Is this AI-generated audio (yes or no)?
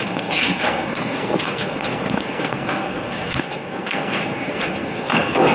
yes